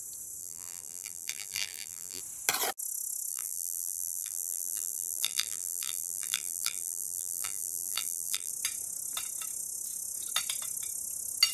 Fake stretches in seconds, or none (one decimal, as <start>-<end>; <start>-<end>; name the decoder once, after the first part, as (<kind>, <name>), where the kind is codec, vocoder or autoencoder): 0.4-2.2 (vocoder, BigVGAN v2); 3.3-8.5